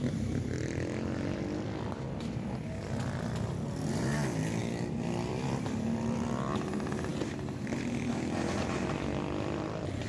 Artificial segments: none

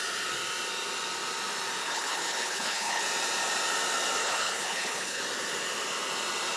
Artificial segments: 1.8-3.0 (codec, HILCodec); 4.2-5.2